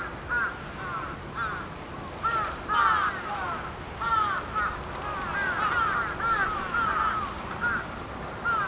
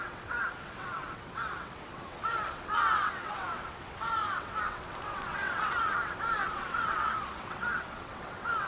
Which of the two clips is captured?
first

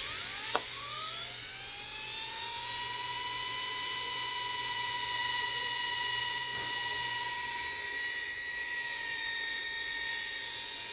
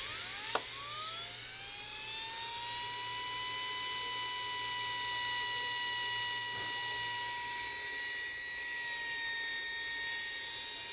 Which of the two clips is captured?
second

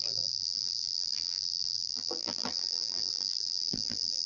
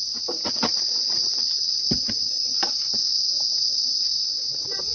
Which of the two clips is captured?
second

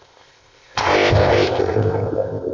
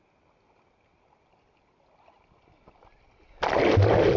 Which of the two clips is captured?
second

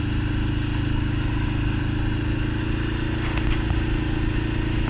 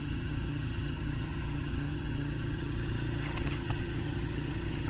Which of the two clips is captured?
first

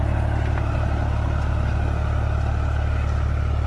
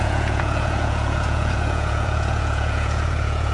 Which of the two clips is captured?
first